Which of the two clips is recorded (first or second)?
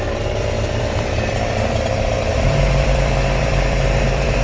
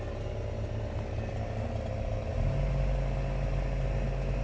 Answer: second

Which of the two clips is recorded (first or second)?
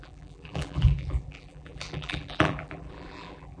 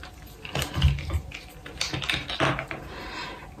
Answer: second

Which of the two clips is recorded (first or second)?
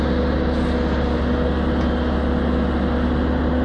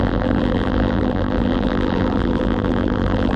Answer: first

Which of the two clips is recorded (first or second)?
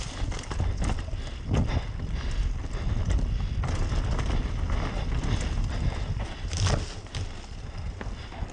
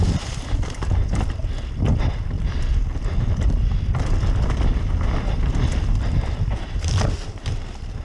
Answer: first